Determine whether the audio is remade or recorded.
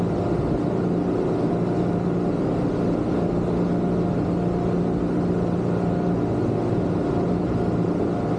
recorded